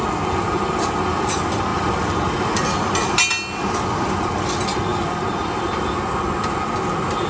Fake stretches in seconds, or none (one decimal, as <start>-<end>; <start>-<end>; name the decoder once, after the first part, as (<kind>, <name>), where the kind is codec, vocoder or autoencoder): none